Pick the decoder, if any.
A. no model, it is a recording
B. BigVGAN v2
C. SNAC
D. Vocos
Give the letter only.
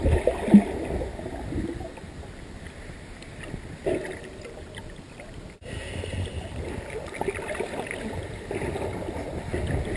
A